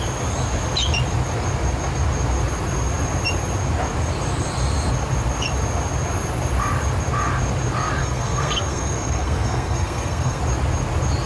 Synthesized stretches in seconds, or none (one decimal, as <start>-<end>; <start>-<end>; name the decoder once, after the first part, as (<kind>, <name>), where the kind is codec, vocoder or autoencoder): 8.0-10.4 (codec, SNAC)